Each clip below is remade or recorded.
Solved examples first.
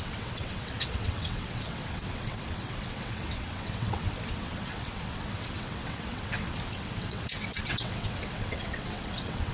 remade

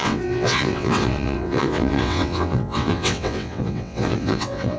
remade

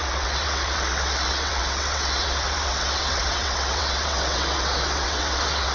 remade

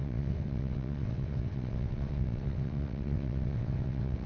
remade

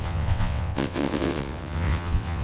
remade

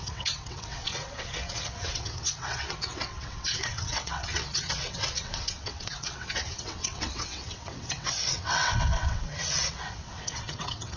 remade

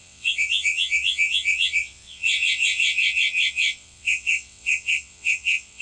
remade